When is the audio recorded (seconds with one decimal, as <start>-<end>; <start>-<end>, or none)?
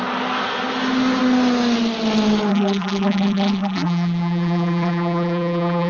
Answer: 0.0-2.5